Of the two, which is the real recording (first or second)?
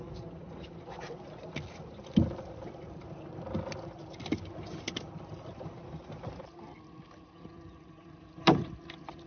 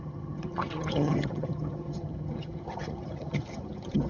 first